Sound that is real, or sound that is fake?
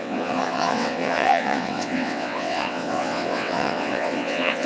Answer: fake